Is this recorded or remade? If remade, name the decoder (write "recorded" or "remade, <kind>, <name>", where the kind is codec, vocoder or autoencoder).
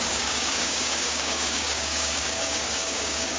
remade, codec, DAC